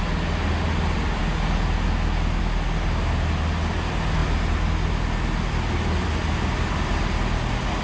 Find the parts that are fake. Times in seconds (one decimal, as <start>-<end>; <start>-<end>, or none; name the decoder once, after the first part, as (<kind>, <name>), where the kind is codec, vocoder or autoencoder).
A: none